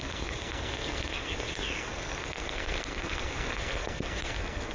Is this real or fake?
fake